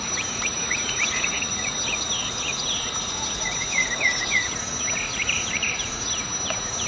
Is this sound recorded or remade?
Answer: remade